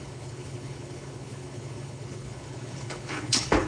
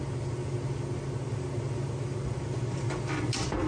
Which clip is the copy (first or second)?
first